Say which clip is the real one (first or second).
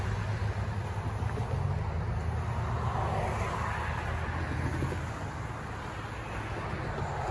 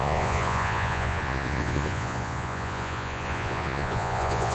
first